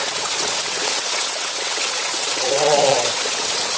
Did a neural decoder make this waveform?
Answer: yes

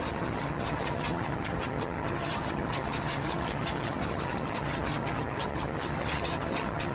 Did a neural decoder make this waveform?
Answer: yes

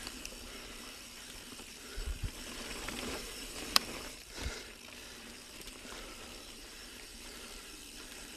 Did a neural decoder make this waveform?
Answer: yes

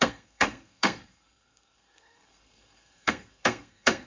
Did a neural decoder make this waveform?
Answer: yes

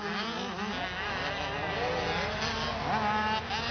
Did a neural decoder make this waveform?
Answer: no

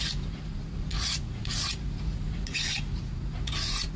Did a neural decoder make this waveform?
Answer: yes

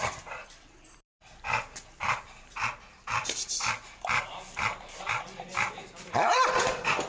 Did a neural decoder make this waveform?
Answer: yes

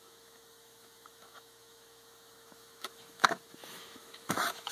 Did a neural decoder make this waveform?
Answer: yes